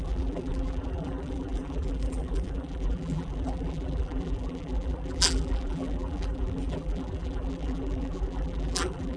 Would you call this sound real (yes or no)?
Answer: no